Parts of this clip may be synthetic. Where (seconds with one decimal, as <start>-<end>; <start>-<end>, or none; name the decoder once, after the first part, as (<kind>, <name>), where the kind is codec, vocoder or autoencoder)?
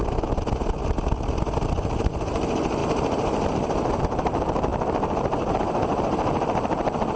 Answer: none